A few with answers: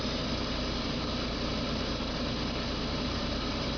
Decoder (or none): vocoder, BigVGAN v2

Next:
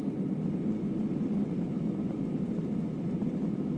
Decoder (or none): none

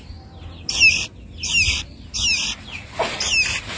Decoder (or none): none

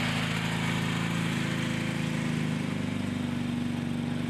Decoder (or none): none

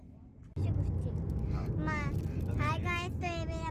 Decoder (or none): none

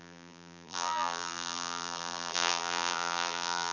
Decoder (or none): vocoder, BigVGAN v2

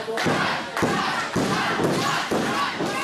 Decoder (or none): none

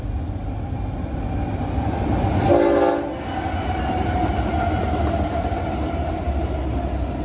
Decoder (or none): none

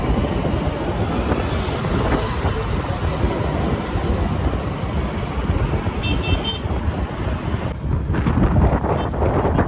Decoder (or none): none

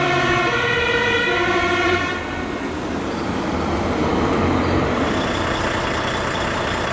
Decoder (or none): vocoder, BigVGAN v2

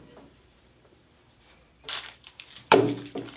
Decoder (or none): vocoder, BigVGAN v2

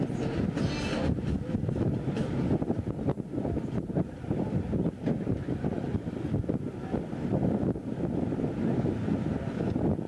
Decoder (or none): none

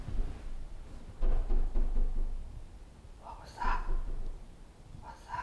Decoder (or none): none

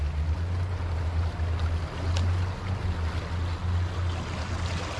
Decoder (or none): none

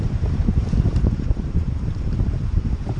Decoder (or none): vocoder, BigVGAN v2